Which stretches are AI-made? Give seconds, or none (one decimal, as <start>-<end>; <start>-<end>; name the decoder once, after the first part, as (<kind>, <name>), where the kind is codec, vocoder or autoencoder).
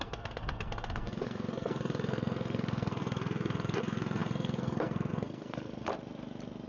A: 0.0-5.9 (codec, SNAC)